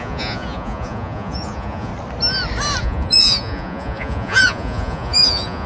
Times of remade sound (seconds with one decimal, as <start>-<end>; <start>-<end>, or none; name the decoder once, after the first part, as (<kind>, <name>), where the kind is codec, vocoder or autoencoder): 0.0-1.9 (vocoder, Vocos); 2.8-5.7